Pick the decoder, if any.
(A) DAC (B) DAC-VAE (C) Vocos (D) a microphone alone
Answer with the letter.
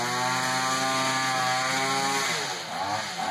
D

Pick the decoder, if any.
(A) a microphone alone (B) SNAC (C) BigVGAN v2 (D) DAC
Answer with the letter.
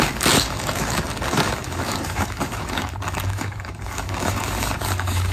D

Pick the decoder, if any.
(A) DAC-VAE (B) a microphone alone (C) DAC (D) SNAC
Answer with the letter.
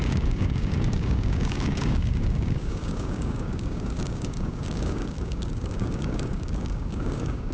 C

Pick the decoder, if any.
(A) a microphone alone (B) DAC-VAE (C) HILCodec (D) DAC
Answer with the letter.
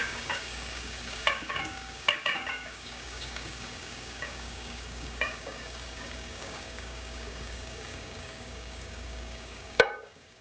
D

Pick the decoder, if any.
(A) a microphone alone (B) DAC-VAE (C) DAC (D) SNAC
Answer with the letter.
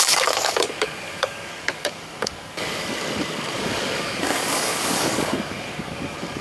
C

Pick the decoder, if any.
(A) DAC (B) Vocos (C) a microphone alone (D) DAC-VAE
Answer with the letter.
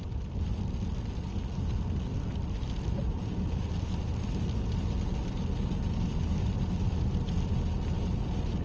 C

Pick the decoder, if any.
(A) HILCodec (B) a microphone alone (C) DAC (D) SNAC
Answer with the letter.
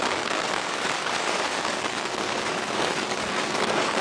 C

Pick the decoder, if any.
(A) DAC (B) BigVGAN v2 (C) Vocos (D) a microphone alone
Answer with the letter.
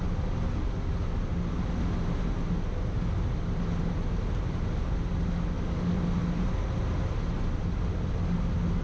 D